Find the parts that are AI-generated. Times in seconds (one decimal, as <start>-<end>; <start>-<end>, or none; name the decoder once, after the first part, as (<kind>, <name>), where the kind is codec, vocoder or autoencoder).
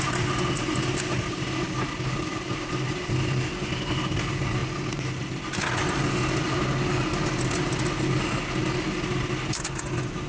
none